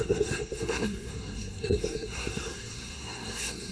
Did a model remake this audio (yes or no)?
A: yes